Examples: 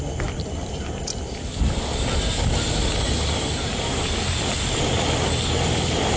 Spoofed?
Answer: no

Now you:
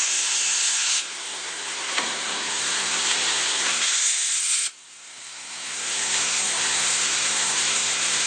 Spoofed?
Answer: yes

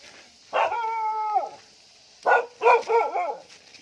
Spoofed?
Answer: no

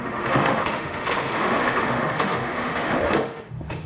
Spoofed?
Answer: yes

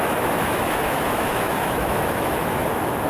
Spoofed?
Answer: yes